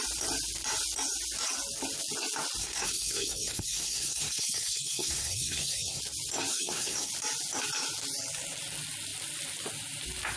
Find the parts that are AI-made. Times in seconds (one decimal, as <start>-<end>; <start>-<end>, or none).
2.6-6.0; 6.5-7.1